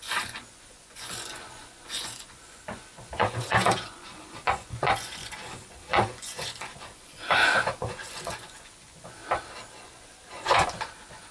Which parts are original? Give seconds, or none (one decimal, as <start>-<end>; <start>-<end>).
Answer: 9.2-9.7

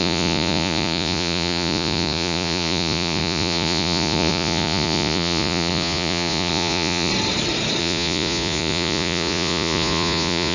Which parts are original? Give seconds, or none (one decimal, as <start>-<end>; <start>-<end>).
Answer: 7.1-7.8

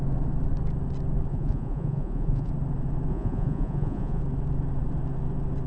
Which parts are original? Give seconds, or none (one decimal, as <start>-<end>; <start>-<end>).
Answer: 0.0-1.3; 2.5-3.1; 4.2-5.7

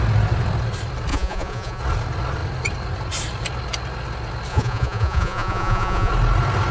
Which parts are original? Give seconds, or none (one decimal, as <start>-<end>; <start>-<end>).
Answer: 0.0-1.1; 1.8-4.5; 6.1-6.7

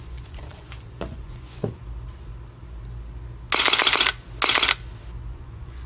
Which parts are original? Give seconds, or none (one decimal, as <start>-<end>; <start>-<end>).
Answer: 1.8-5.3

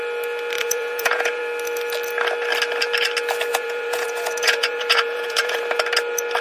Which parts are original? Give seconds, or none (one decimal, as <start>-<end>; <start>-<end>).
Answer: 0.0-0.6; 1.4-3.5; 5.6-6.4

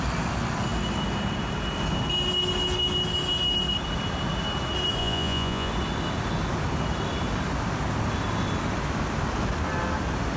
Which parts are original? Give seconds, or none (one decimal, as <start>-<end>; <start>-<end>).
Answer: 0.0-5.0; 5.7-10.4

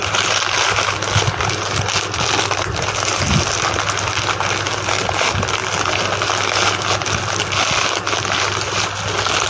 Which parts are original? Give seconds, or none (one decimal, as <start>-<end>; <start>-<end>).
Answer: 0.0-9.5